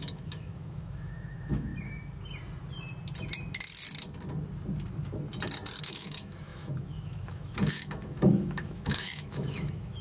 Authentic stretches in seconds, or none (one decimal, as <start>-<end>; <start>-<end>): 1.7-5.8